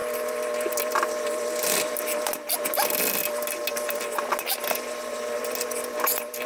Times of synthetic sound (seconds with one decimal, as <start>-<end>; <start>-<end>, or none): none